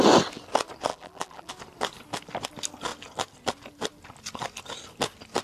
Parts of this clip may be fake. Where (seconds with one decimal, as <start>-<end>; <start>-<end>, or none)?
0.9-1.5

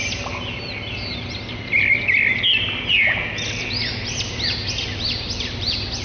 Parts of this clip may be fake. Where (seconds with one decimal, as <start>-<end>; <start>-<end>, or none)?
none

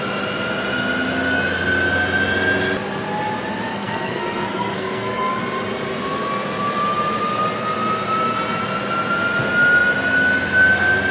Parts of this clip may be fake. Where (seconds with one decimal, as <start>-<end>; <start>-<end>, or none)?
3.7-5.4

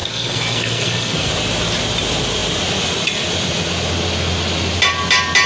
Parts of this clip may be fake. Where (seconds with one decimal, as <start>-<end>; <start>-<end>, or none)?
0.0-1.3

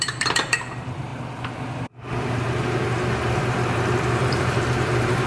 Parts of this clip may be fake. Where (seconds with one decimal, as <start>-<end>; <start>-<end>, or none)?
0.0-1.1; 4.3-5.3

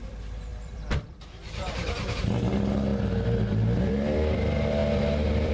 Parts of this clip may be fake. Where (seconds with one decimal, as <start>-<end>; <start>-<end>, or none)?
0.0-2.9; 3.8-5.5

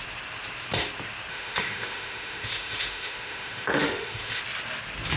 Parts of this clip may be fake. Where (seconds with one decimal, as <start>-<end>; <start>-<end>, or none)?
1.3-4.4

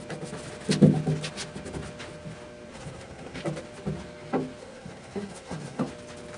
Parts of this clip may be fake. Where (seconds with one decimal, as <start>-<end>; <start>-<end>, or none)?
2.7-3.4; 4.6-5.9